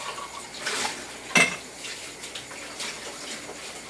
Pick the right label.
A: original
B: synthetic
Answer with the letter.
A